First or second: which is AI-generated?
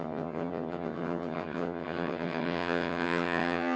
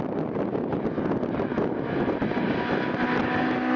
first